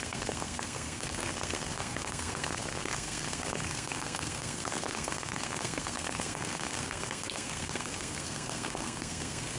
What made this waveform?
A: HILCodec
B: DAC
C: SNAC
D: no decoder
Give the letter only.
C